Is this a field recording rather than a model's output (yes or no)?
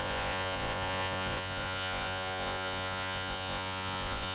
no